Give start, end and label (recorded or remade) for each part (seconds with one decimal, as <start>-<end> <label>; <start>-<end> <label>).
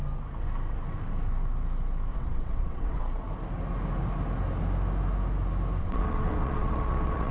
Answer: 0.0-2.1 recorded; 2.1-3.0 remade; 3.0-5.8 recorded; 5.8-7.3 remade